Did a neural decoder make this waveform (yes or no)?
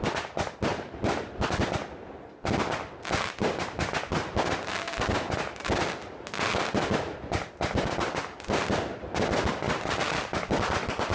no